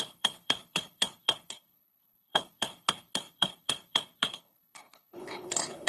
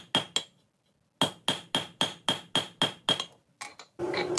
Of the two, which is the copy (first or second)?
first